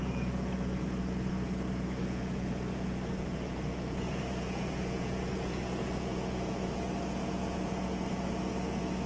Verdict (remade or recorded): remade